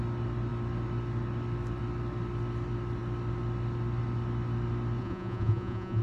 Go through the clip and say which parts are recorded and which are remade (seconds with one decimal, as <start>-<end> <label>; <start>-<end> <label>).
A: 0.0-5.0 recorded; 5.0-6.0 remade